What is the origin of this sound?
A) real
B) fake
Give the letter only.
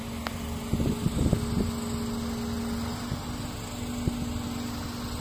A